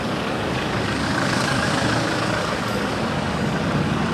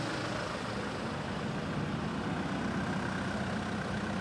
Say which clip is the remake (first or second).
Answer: first